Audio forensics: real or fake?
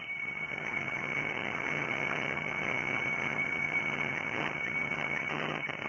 fake